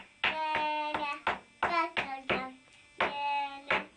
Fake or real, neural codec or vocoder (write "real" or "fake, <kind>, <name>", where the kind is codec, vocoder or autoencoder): real